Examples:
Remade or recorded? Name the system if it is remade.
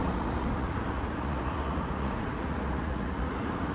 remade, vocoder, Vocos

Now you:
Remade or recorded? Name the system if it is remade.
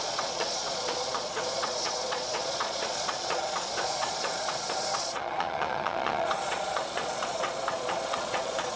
remade, vocoder, Vocos